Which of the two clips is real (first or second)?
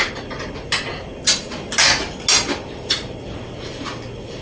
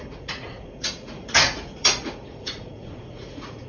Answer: first